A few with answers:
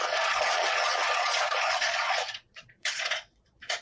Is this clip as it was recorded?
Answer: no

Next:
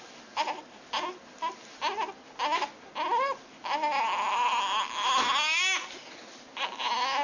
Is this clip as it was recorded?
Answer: yes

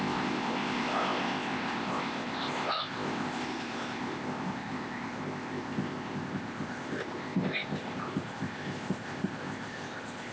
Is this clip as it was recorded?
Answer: no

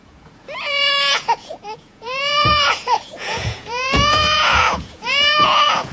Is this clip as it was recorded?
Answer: no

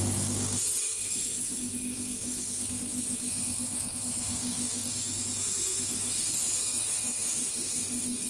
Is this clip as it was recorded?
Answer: no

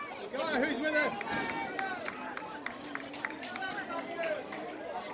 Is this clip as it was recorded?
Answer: yes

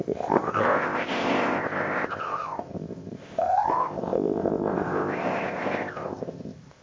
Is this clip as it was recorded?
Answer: no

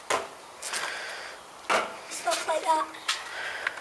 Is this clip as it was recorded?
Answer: yes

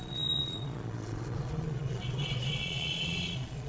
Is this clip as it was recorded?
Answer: no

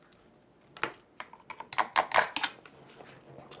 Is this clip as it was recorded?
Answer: yes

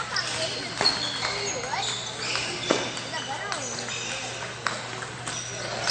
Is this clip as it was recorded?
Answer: yes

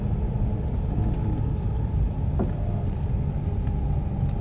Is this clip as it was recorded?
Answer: yes